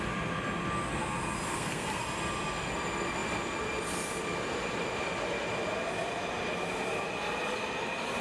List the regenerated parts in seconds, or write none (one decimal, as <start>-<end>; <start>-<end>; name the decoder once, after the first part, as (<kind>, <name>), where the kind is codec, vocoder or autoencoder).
1.5-2.0 (codec, SNAC)